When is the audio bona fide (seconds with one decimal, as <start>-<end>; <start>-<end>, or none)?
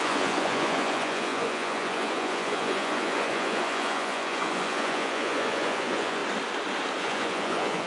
6.2-7.0